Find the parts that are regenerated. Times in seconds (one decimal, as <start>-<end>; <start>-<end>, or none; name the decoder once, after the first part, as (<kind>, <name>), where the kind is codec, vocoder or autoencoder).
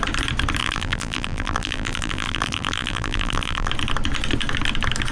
0.6-3.7 (vocoder, BigVGAN v2)